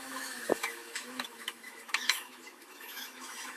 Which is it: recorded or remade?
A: remade